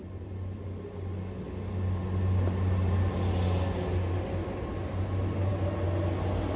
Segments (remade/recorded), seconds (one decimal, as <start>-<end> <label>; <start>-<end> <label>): 0.0-6.6 recorded